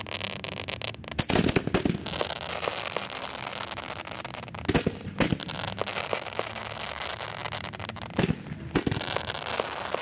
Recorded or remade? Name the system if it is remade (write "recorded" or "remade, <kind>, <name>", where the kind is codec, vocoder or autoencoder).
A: recorded